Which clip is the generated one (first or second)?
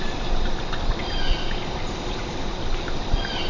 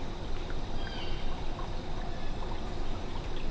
first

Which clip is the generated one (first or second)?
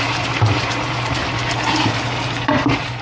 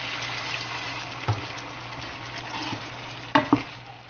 first